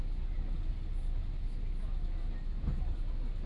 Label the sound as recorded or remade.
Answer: recorded